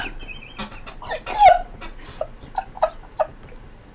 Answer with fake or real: real